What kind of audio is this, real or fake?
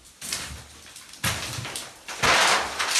fake